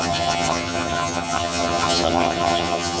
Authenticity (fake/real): fake